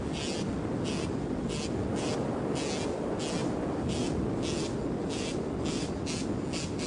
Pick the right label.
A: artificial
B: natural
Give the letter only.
B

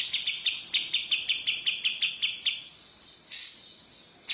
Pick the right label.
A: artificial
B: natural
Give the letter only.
A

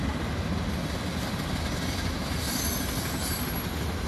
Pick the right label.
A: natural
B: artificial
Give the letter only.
A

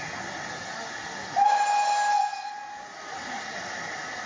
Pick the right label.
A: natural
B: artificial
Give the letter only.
A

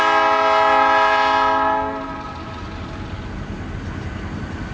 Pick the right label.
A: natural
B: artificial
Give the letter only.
A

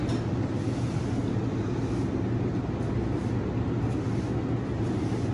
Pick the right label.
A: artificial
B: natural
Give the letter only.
B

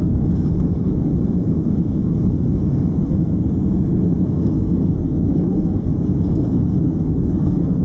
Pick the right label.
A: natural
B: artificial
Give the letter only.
B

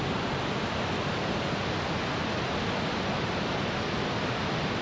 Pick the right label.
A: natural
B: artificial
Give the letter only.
A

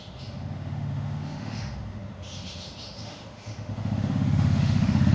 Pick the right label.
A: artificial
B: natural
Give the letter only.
A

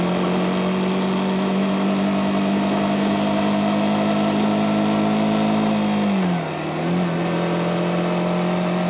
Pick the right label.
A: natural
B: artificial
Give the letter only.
A